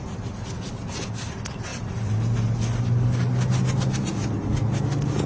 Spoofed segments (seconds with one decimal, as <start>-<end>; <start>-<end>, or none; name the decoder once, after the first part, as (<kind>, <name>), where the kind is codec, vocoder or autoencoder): none

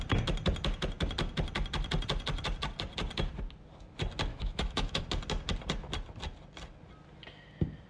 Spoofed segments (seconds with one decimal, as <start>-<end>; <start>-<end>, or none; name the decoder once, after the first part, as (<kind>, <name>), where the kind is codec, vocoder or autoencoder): 4.3-5.0 (autoencoder, DAC-VAE)

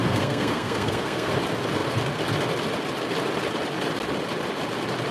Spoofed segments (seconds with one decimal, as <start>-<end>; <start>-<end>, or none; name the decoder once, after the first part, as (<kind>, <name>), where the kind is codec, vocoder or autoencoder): 0.0-1.3 (codec, SNAC)

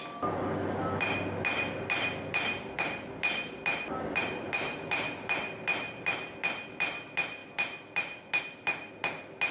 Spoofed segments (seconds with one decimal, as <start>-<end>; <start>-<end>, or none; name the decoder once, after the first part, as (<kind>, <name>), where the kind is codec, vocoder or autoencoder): none

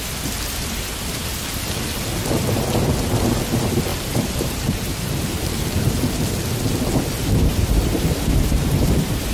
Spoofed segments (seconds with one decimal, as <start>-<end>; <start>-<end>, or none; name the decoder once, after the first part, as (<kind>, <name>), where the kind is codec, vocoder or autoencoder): 3.9-6.4 (vocoder, BigVGAN v2); 7.5-9.3